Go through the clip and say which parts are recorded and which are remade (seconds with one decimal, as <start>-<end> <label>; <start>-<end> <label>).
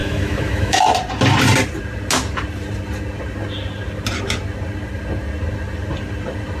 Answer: 0.0-0.8 remade; 0.8-6.6 recorded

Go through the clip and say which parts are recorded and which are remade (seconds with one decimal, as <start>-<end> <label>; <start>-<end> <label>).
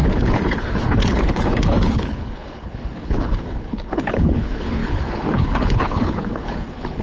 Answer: 0.0-7.0 remade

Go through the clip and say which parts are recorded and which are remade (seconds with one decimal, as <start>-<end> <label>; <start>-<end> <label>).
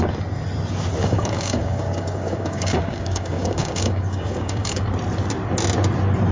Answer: 0.0-1.0 recorded; 1.0-4.8 remade; 4.8-6.3 recorded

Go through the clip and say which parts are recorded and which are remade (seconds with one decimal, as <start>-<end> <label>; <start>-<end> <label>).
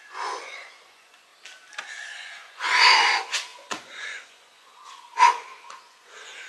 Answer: 0.0-1.3 remade; 1.3-1.9 recorded; 1.9-6.5 remade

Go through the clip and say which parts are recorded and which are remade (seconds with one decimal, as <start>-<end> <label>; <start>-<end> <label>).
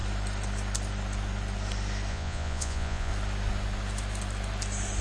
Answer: 0.0-2.1 recorded; 2.1-3.1 remade; 3.1-5.0 recorded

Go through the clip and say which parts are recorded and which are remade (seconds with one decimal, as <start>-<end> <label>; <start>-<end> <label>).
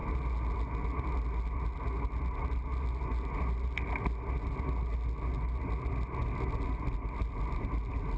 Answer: 0.0-8.2 recorded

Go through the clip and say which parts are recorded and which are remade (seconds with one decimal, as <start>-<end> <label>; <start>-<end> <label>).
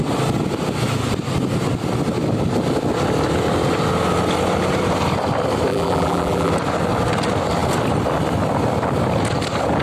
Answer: 0.0-5.7 recorded; 5.7-6.5 remade; 6.5-9.8 recorded